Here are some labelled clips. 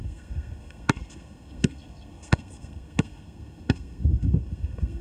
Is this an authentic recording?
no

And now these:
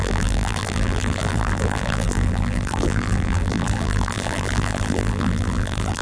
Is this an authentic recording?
no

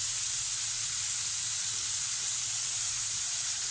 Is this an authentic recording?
no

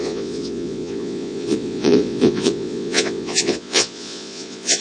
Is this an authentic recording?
no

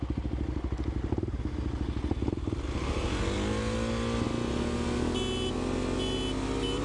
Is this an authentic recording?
yes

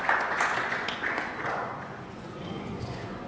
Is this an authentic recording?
no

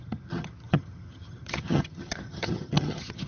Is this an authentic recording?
no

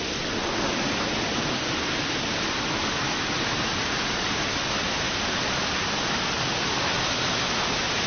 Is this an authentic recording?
yes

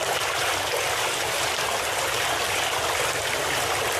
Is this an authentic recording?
yes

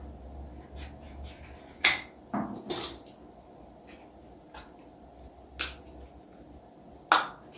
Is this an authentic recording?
yes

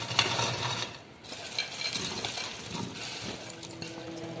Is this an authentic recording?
yes